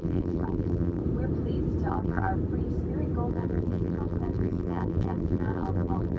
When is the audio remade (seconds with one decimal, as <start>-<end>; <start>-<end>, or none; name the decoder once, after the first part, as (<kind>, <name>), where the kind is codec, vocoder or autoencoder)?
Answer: 0.0-1.0 (vocoder, BigVGAN v2); 1.9-2.3; 3.3-6.2